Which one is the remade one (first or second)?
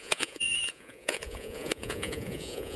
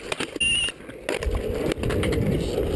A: first